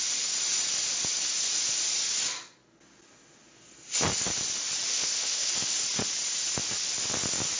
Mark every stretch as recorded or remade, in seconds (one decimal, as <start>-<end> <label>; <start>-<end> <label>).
0.0-4.9 recorded; 4.9-5.5 remade; 5.5-7.6 recorded